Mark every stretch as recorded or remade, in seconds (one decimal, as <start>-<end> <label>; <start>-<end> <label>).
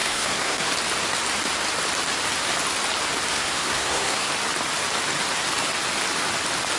0.0-0.7 remade; 0.7-3.3 recorded; 3.3-4.3 remade; 4.3-6.8 recorded